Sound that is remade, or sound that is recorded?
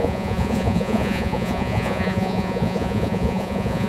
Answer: remade